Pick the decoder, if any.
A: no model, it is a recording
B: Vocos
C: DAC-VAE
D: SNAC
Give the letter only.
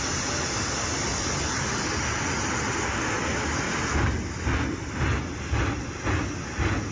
A